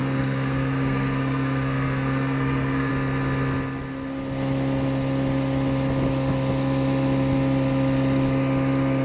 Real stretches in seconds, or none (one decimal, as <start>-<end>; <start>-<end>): 2.9-9.0